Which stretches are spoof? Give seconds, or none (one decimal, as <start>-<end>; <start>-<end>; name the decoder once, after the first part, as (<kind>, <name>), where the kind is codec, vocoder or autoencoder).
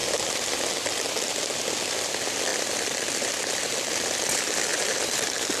0.0-0.8 (vocoder, BigVGAN v2); 2.5-3.5; 4.7-5.6